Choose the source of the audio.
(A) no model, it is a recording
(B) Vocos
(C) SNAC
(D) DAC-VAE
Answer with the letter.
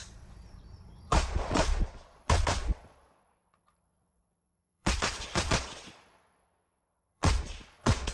B